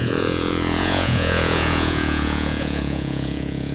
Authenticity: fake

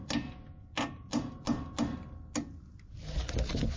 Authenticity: real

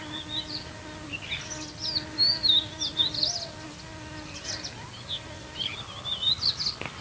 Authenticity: real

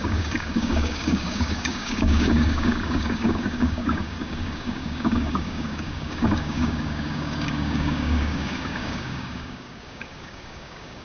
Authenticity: fake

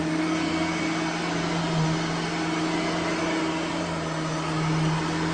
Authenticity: real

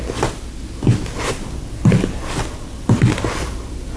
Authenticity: real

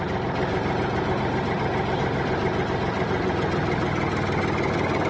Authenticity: real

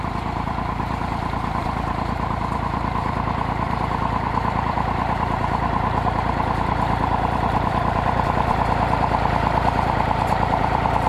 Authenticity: fake